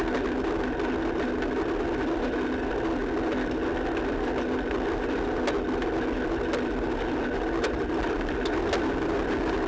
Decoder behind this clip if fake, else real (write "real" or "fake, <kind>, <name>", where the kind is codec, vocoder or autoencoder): real